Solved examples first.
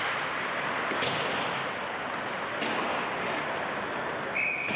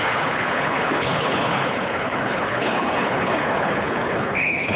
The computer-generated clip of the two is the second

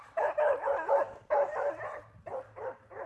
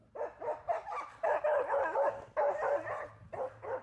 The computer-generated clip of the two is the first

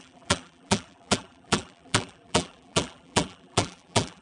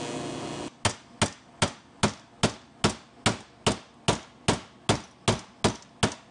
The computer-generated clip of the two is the first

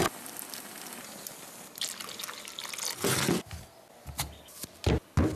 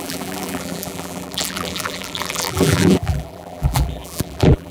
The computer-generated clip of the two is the second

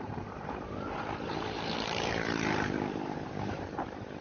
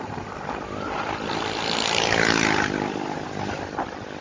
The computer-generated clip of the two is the first